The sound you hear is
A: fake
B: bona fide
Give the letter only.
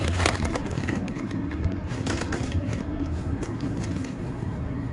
A